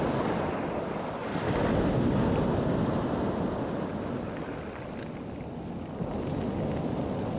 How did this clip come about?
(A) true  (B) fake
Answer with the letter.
A